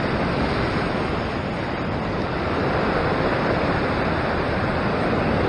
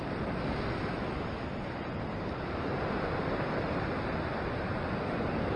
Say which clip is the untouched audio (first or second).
second